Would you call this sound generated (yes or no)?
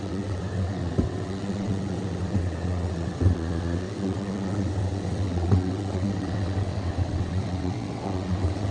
yes